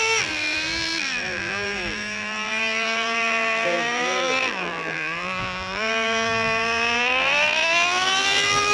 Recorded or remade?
remade